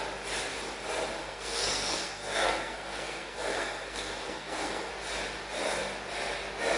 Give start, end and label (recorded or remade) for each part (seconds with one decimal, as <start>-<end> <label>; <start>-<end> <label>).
0.0-1.2 recorded; 1.2-4.9 remade; 4.9-6.8 recorded